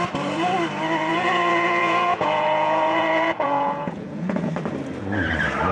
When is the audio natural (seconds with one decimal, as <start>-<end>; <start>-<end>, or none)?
0.0-1.1; 4.5-5.7